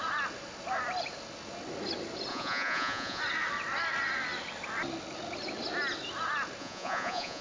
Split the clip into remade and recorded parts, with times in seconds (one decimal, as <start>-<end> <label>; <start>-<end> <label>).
0.0-2.3 recorded; 2.3-3.2 remade; 3.2-6.6 recorded; 6.6-7.4 remade